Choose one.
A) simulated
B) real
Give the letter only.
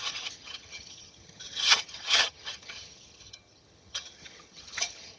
A